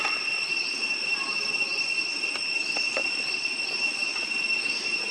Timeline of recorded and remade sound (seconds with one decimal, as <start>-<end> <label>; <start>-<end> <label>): 0.0-5.1 recorded